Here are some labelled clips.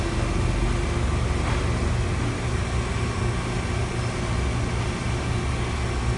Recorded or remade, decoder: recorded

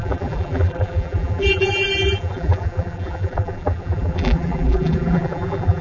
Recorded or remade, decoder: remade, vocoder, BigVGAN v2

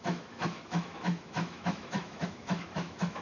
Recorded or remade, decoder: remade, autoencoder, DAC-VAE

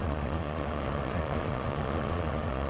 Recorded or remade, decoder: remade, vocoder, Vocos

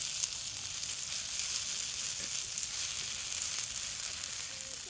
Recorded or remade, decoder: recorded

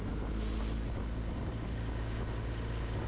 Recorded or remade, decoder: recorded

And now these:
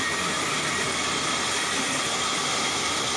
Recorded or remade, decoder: recorded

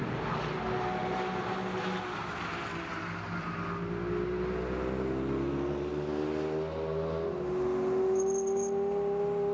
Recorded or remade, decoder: recorded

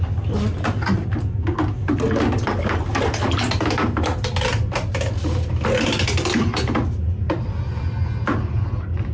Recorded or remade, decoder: recorded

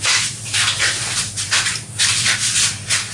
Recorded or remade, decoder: recorded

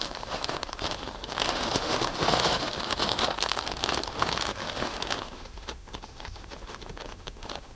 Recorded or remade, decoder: remade, autoencoder, DAC-VAE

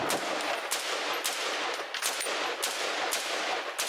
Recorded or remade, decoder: recorded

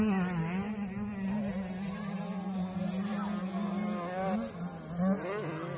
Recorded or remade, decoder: recorded